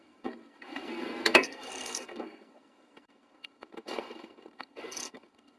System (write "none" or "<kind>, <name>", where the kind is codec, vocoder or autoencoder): codec, SNAC